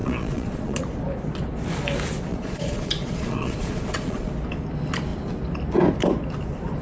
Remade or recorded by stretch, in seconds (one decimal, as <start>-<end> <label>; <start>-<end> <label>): 0.0-0.8 remade; 0.8-2.3 recorded; 2.3-4.3 remade; 4.3-6.8 recorded